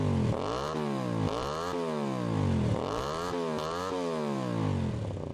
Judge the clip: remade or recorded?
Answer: recorded